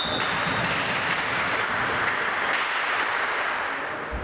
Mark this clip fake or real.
real